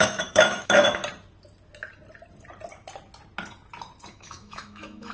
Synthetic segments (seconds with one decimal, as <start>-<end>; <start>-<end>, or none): 0.0-1.0; 4.1-5.1